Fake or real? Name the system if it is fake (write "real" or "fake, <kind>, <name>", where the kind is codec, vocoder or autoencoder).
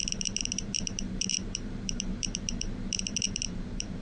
fake, vocoder, BigVGAN v2